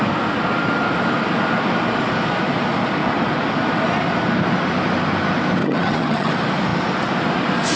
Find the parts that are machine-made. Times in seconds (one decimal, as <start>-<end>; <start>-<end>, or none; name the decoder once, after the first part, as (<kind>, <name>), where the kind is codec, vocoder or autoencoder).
5.6-6.3 (vocoder, HiFi-GAN)